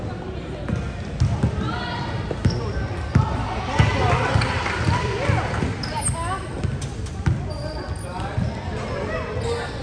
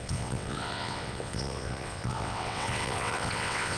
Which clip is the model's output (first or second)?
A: second